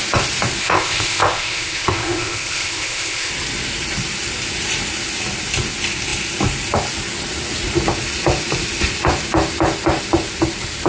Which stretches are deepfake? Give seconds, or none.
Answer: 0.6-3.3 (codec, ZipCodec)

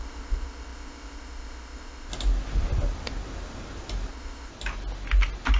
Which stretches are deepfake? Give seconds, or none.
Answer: 0.0-2.1 (codec, ZipCodec); 4.1-4.5

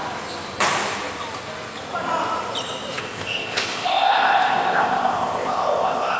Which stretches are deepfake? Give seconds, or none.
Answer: 3.0-6.2 (codec, ZipCodec)

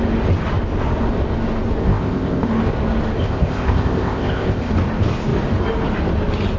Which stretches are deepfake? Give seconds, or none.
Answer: 1.8-2.5 (codec, ZipCodec); 3.2-4.7

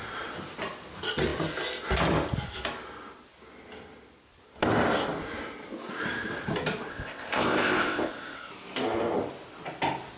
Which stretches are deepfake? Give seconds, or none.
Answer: 6.9-8.5 (codec, ZipCodec)

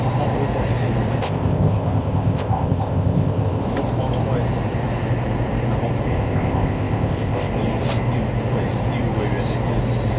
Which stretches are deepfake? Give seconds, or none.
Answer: 1.2-3.6 (codec, ZipCodec); 6.1-7.5

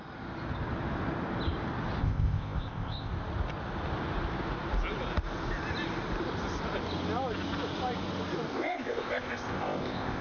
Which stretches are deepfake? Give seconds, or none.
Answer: 2.0-3.1 (codec, ZipCodec); 8.5-10.2